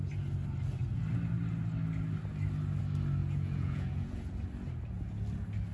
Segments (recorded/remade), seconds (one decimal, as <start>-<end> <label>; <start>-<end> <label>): 0.0-3.2 recorded; 3.2-4.2 remade; 4.2-5.7 recorded

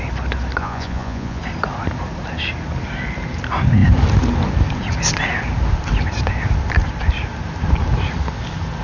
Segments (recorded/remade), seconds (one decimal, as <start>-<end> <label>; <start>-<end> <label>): 0.0-0.6 recorded; 0.6-1.4 remade; 1.4-8.8 recorded